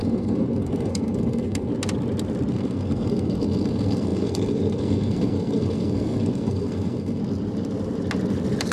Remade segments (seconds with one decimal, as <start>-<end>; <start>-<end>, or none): 0.0-1.7; 2.5-7.2